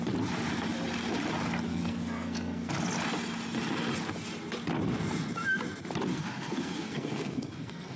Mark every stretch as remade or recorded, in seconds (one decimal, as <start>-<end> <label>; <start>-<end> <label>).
0.0-1.7 recorded; 1.7-2.7 remade; 2.7-6.1 recorded; 6.1-8.0 remade